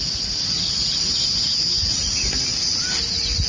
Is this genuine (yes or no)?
yes